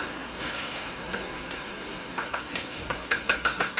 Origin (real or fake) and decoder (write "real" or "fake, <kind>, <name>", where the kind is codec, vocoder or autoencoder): fake, codec, SNAC